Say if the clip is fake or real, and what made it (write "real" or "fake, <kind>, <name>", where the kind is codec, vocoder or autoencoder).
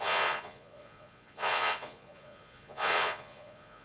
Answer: fake, vocoder, Vocos